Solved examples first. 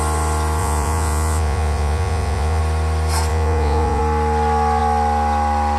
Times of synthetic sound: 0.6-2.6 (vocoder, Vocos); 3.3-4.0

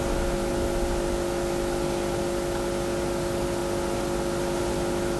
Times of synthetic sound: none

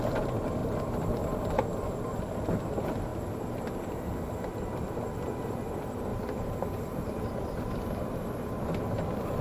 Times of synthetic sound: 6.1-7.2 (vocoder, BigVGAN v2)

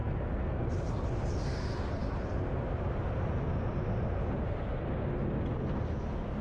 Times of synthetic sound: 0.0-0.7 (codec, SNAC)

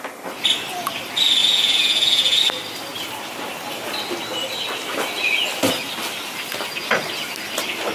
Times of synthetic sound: 1.4-2.4 (vocoder, Vocos)